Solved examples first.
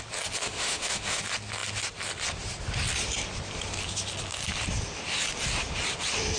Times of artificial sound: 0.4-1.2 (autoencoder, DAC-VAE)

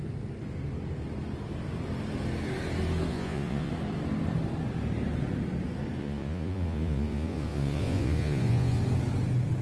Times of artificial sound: 3.1-3.7 (vocoder, Vocos); 6.0-8.8